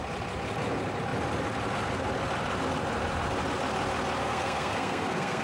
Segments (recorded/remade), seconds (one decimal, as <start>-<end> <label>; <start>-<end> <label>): 0.0-4.2 recorded; 4.2-5.4 remade